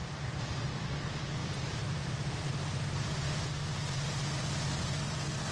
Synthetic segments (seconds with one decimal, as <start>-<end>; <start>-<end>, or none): 0.0-0.6; 1.4-2.5